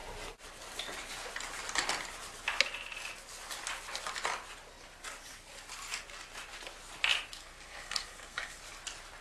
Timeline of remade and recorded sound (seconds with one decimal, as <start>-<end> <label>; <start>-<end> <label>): 0.0-7.4 recorded; 7.4-8.6 remade; 8.6-9.2 recorded